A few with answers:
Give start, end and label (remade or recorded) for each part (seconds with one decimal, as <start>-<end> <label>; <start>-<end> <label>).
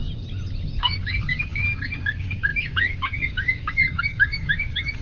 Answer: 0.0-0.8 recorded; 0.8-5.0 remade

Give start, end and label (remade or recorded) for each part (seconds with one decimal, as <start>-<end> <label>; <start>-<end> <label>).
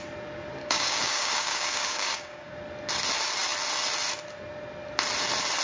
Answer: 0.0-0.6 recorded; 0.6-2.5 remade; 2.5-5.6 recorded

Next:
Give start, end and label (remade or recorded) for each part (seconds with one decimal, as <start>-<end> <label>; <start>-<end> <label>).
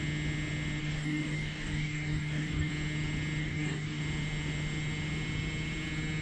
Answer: 0.0-0.8 recorded; 0.8-2.7 remade; 2.7-3.4 recorded; 3.4-4.0 remade; 4.0-6.2 recorded